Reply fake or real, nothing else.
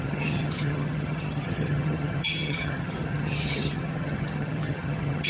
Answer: fake